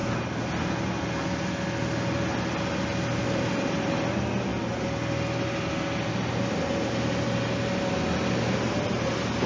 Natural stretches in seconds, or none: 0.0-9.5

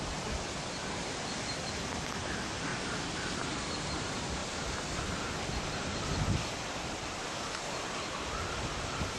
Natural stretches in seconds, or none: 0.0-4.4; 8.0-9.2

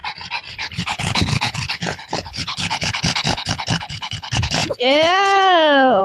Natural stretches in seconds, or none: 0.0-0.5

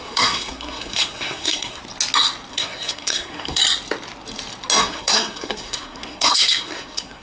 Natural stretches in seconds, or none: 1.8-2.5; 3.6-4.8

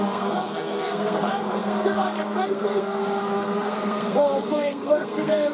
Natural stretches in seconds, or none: none